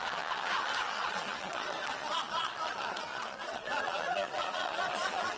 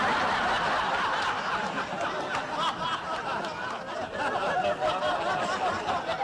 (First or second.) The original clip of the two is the second